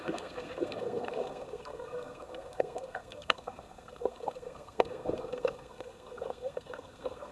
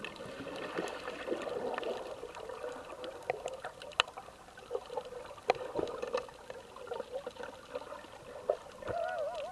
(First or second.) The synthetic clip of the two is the first